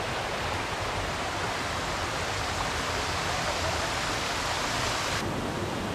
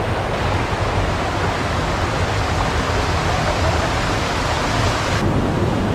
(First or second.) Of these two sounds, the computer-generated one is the first